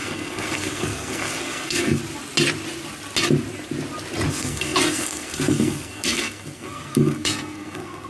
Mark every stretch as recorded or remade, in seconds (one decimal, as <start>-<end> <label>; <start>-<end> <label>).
0.0-2.0 remade; 2.0-4.3 recorded; 4.3-8.1 remade